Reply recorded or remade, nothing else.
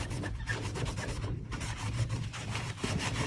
remade